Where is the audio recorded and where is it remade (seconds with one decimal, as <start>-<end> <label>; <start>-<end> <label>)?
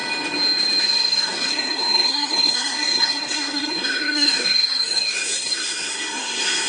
0.0-0.8 recorded; 0.8-6.7 remade